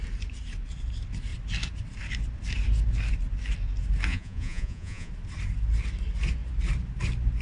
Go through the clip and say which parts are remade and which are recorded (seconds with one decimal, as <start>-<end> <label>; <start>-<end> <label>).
0.0-4.1 recorded; 4.1-5.1 remade; 5.1-7.4 recorded